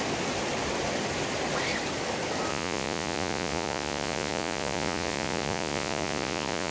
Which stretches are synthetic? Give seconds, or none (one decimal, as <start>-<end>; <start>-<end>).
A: 2.5-6.7